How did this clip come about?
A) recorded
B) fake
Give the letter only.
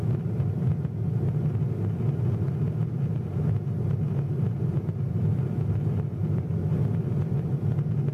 A